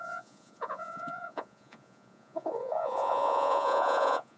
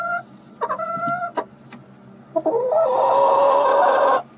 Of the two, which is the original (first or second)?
second